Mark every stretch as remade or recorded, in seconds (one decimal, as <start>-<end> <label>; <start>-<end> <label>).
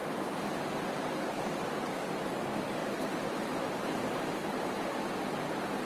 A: 0.0-2.0 remade; 2.0-2.8 recorded; 2.8-5.1 remade; 5.1-5.9 recorded